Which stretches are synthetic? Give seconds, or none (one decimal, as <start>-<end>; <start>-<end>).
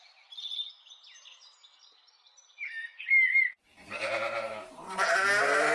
1.7-5.1